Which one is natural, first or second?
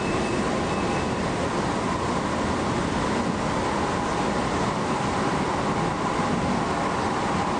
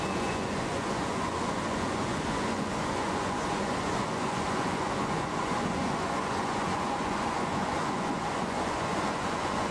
first